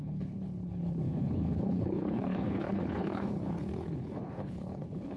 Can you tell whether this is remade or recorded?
remade